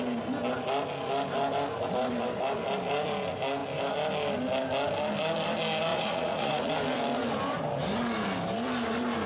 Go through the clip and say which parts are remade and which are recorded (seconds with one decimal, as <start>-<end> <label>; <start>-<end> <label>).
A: 0.0-5.9 recorded; 5.9-6.7 remade; 6.7-9.3 recorded